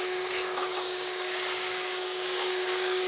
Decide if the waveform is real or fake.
fake